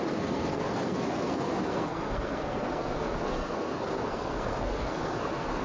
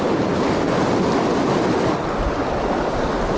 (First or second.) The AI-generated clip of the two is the first